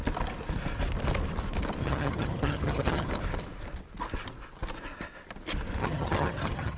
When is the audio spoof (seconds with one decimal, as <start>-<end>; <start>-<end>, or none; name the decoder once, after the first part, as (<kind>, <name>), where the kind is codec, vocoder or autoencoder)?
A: 1.8-3.1 (vocoder, HiFi-GAN); 5.8-6.8